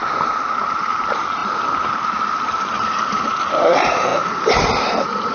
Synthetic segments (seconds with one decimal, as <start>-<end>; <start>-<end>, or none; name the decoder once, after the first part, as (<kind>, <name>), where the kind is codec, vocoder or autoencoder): 0.6-1.4 (vocoder, BigVGAN v2); 2.6-5.3